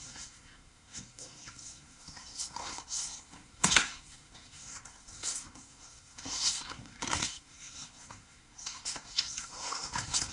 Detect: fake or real fake